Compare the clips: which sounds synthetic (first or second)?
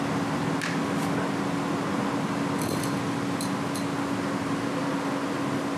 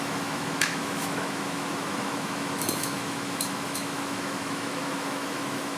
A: second